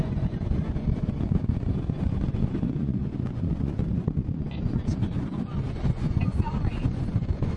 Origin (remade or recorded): remade